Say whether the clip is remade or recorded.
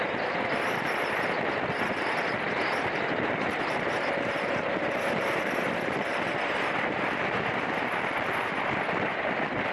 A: remade